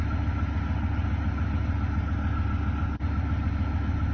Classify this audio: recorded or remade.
recorded